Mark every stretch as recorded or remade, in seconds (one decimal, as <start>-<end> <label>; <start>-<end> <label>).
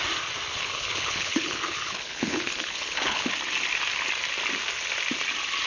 0.0-0.5 recorded; 0.5-3.3 remade; 3.3-5.7 recorded